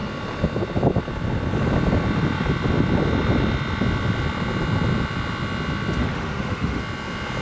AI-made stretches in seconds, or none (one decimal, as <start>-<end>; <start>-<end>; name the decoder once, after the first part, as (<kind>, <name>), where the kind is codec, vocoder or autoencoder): 6.0-6.8 (autoencoder, DAC-VAE)